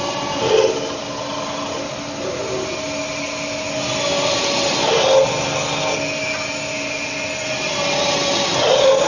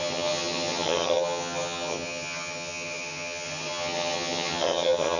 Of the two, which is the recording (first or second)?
first